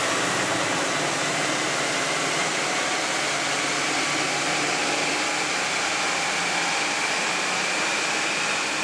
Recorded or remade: recorded